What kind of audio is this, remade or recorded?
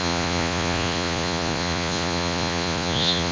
remade